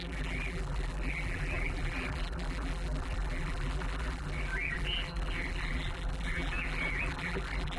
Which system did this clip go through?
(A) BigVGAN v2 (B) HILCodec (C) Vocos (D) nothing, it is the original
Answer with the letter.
A